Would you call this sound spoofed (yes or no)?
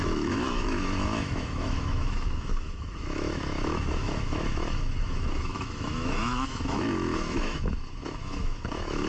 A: yes